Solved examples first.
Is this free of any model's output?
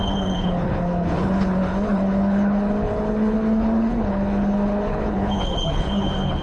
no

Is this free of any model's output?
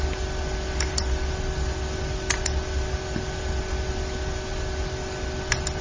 yes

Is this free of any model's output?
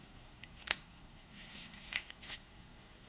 no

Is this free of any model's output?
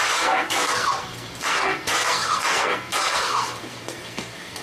no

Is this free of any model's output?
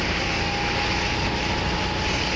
yes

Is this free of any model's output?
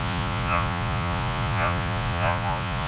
no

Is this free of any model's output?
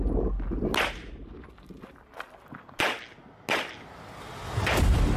yes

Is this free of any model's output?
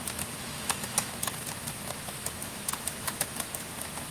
no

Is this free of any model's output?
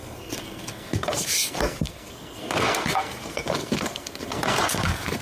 no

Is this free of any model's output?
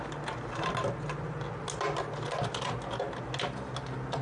yes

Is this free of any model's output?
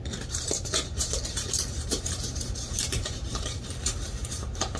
no